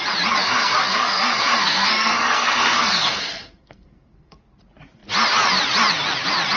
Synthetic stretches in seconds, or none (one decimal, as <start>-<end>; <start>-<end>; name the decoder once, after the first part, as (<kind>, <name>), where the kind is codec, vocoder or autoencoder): 0.4-4.4 (codec, SNAC)